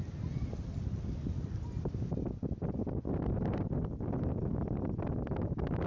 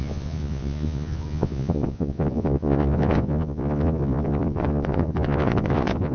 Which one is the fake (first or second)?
second